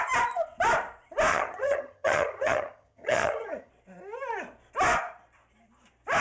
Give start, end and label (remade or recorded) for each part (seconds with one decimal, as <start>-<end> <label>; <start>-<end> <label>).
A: 0.0-1.3 recorded; 1.3-3.7 remade; 3.7-6.2 recorded